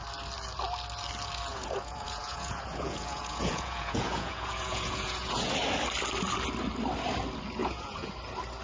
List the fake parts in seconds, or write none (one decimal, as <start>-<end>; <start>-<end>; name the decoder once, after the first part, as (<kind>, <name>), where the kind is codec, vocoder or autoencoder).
1.5-5.5 (vocoder, Vocos); 7.6-8.1